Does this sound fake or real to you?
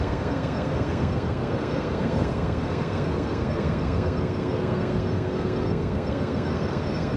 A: fake